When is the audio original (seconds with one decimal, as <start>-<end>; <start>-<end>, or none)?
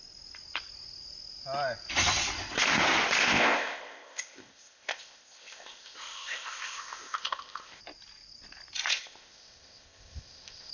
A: 0.0-3.2; 7.8-8.9